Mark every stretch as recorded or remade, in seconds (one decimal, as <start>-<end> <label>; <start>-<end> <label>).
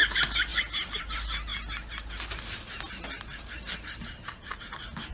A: 0.0-5.1 recorded